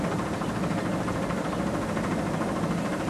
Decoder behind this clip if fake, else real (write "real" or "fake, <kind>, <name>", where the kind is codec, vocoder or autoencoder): real